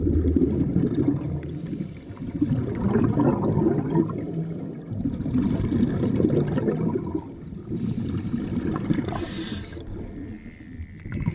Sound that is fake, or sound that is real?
real